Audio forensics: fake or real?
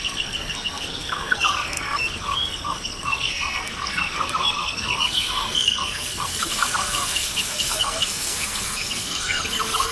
fake